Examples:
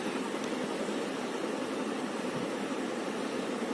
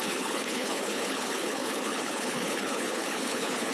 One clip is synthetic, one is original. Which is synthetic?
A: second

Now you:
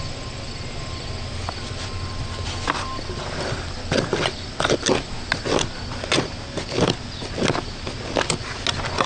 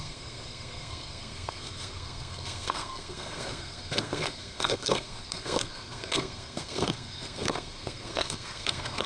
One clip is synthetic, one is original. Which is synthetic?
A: second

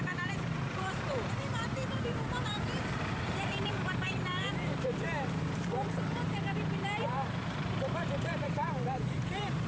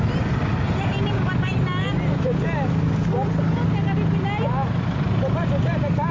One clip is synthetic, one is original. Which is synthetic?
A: first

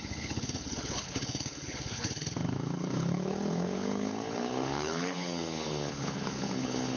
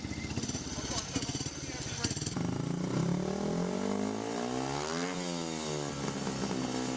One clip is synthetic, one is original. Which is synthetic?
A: first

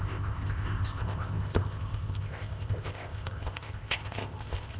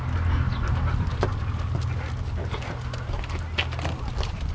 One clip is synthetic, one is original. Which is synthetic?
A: first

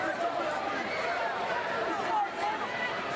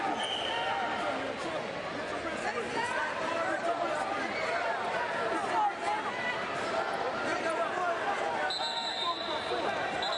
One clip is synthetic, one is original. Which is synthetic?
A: first